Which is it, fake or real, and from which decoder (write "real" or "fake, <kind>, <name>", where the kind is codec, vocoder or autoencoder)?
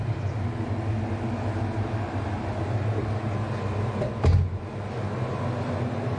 real